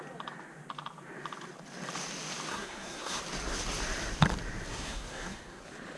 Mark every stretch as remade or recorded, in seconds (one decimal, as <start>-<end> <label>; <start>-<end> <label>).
0.0-2.5 recorded; 2.5-3.2 remade; 3.2-4.7 recorded; 4.7-5.6 remade; 5.6-6.0 recorded